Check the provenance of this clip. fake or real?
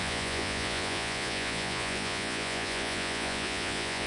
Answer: fake